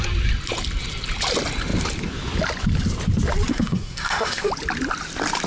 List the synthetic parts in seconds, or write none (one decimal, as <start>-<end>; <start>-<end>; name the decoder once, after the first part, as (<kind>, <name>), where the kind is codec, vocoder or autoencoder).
3.5-4.5 (codec, SNAC)